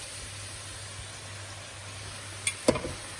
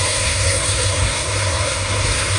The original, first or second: first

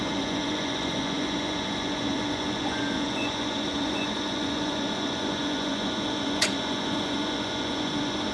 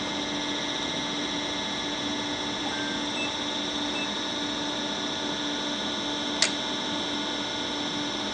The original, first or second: second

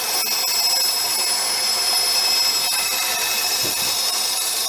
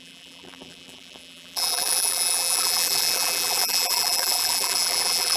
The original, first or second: first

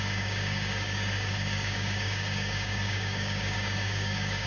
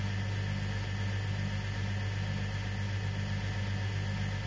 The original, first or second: second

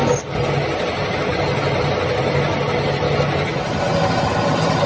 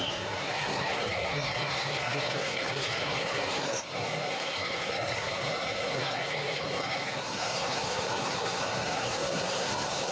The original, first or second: first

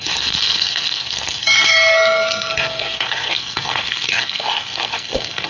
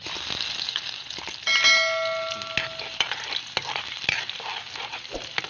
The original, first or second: second